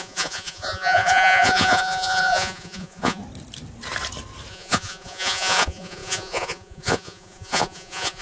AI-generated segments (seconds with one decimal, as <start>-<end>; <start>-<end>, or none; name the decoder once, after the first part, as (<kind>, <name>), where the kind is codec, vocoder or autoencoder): 0.0-3.2 (vocoder, Vocos); 4.5-8.2